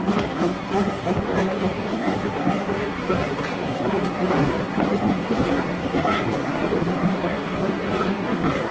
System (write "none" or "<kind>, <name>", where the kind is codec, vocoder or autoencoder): codec, SNAC